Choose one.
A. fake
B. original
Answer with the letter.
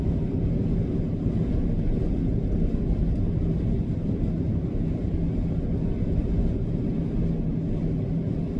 B